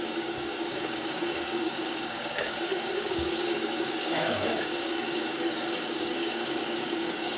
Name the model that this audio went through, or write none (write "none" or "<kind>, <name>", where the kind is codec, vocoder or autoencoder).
codec, DAC